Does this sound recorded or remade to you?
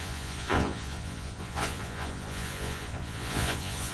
remade